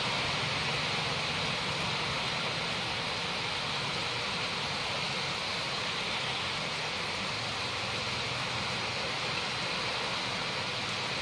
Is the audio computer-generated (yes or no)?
no